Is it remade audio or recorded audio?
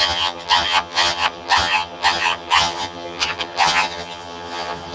remade